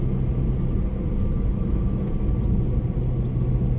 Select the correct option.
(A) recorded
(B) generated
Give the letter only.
A